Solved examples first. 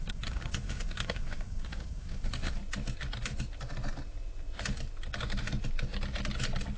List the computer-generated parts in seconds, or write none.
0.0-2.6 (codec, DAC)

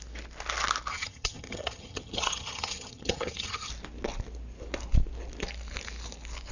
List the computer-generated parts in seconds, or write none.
0.9-3.7 (vocoder, HiFi-GAN)

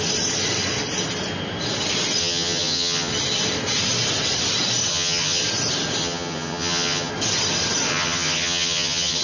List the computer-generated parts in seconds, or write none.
2.2-3.1 (vocoder, HiFi-GAN); 4.9-5.4; 6.0-7.1; 7.9-9.2